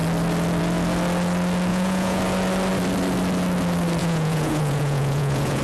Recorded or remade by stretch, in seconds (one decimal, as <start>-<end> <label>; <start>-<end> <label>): 0.0-1.7 recorded; 1.7-2.2 remade; 2.2-4.0 recorded; 4.0-5.6 remade